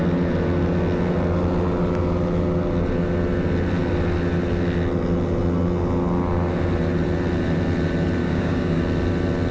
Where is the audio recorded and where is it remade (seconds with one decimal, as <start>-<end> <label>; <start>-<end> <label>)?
0.0-8.2 recorded; 8.2-8.8 remade; 8.8-9.5 recorded